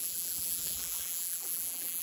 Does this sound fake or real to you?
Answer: fake